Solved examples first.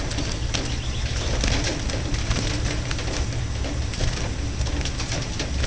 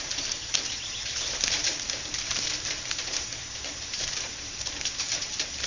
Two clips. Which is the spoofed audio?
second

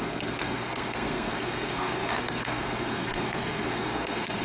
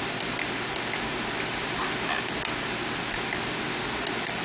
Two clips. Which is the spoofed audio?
first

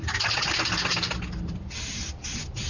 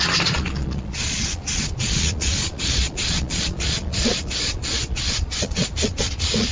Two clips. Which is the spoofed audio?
second